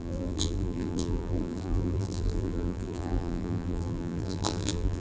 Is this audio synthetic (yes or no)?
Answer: yes